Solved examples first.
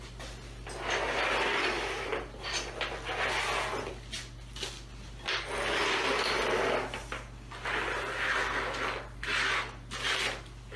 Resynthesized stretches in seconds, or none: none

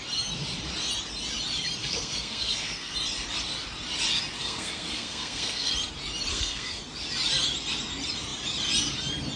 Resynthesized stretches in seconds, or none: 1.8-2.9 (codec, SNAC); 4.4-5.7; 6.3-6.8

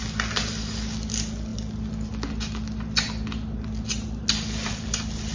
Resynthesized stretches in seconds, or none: none

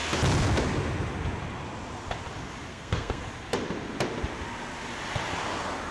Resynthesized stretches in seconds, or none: 2.7-3.2 (codec, SNAC)

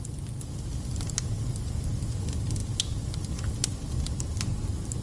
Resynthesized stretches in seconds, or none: none

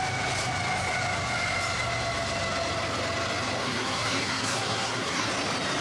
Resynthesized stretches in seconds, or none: 3.6-5.3 (codec, SNAC)

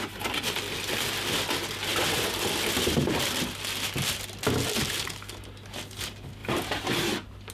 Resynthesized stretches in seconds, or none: none

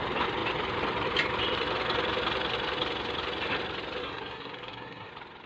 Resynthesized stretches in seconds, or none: 4.0-5.1 (codec, SNAC)